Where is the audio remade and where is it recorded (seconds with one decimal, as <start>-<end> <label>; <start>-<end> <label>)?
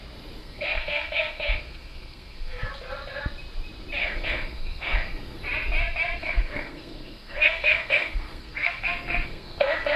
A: 0.0-0.4 recorded; 0.4-2.7 remade; 2.7-4.0 recorded; 4.0-5.4 remade; 5.4-6.2 recorded; 6.2-10.0 remade